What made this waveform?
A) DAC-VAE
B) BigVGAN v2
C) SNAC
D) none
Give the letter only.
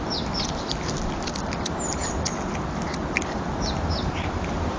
D